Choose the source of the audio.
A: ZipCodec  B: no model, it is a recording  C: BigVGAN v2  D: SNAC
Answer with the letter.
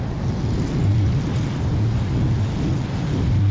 B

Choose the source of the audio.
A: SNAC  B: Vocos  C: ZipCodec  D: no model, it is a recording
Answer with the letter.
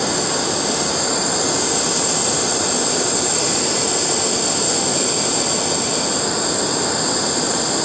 D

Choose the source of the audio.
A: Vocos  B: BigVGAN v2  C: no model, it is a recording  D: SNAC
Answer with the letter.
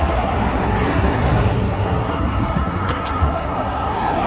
D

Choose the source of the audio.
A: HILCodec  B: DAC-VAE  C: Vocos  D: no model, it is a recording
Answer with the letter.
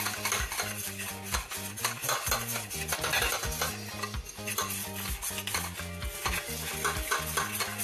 D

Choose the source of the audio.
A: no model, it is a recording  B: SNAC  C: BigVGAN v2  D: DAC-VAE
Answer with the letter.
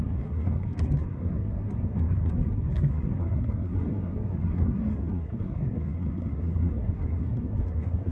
B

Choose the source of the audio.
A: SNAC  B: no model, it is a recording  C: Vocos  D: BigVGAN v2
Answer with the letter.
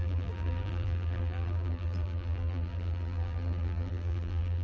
D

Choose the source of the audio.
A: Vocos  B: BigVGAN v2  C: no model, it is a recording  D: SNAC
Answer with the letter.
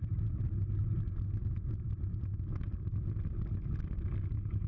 C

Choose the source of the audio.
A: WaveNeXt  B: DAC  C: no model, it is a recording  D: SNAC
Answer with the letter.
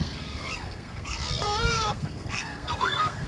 D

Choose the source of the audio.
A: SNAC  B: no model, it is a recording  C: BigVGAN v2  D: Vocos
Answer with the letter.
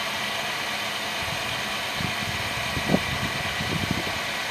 B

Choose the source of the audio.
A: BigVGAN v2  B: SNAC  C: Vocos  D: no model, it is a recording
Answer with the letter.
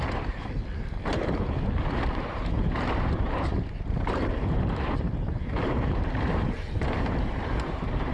A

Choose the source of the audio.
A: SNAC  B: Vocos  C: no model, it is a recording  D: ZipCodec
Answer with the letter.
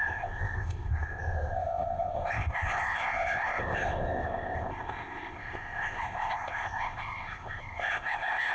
D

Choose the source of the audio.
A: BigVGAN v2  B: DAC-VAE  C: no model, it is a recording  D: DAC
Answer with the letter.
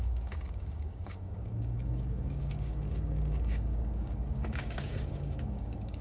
D